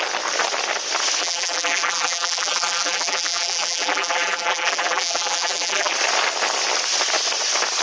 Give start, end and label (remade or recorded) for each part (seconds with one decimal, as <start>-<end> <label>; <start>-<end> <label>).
0.0-1.2 recorded; 1.2-5.9 remade; 5.9-7.8 recorded